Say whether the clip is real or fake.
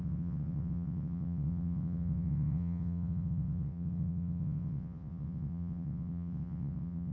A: fake